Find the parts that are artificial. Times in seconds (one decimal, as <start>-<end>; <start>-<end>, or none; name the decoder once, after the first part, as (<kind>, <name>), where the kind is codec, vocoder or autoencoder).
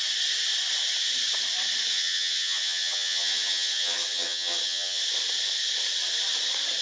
1.9-5.0 (vocoder, HiFi-GAN)